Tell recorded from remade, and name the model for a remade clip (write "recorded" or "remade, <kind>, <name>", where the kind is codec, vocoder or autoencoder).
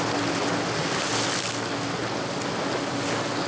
recorded